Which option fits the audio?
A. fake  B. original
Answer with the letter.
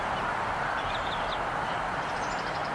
A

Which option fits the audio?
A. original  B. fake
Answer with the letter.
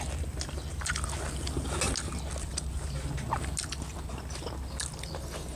A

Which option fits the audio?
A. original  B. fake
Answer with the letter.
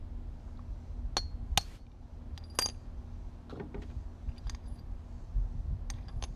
A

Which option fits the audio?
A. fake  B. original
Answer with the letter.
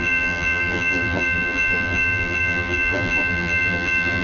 A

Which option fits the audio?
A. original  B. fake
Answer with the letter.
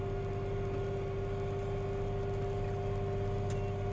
A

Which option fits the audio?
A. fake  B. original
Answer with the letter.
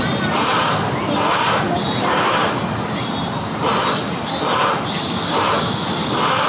A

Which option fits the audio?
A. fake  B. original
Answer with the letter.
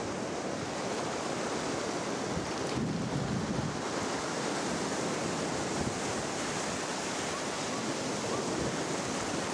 B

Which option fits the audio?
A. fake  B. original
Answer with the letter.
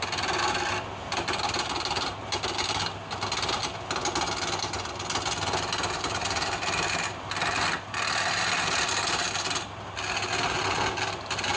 B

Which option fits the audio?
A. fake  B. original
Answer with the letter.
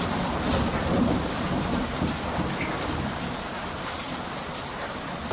A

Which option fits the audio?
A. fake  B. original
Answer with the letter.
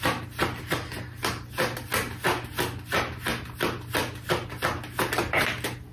B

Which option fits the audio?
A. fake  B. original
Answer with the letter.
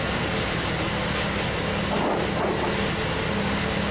B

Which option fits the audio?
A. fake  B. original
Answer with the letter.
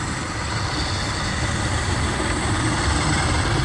B